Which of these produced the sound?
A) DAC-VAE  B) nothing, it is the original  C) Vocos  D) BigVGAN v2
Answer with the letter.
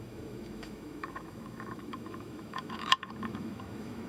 A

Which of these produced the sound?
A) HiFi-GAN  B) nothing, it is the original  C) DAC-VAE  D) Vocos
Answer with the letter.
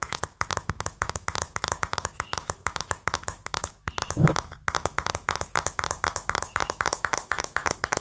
C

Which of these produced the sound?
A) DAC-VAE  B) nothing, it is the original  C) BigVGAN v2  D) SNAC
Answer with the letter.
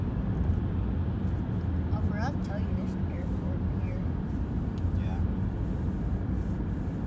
B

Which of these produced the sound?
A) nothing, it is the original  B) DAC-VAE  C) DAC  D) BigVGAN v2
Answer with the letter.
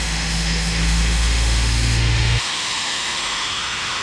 B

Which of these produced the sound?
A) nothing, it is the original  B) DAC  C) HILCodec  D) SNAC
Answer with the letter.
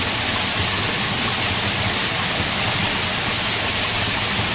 A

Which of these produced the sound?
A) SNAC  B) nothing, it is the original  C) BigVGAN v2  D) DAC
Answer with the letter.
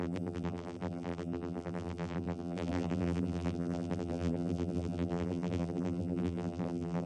C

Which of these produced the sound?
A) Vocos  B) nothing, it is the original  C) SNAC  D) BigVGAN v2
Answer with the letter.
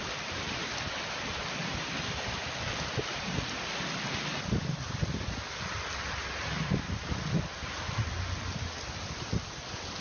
B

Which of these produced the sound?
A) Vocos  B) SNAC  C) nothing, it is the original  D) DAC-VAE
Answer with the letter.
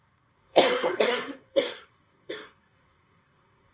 B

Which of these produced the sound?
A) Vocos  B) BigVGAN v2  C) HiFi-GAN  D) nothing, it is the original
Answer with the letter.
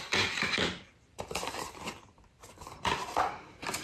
B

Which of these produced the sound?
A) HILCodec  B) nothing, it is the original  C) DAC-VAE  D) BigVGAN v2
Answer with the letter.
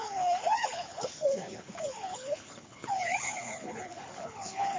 A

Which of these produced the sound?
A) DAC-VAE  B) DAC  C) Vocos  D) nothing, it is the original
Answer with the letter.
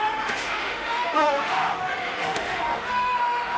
A